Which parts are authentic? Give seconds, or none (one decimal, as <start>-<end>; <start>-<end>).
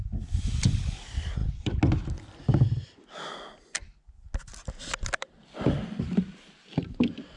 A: 0.0-7.4